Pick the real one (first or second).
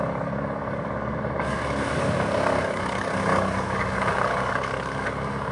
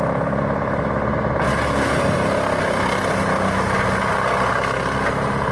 second